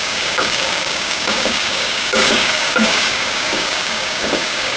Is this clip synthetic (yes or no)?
yes